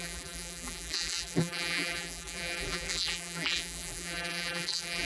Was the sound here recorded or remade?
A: remade